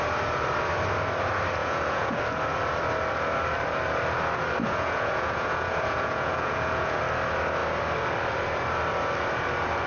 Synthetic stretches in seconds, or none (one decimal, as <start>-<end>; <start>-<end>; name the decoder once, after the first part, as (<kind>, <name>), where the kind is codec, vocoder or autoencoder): 1.6-2.2 (vocoder, Vocos); 4.6-7.0